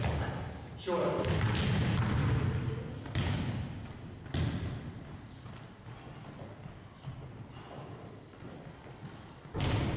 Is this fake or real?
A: real